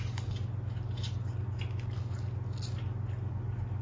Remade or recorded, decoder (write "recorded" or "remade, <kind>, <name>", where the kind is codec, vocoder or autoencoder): recorded